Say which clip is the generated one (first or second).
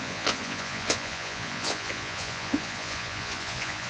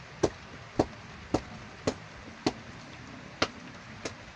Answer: first